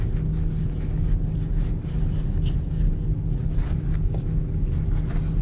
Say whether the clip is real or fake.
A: real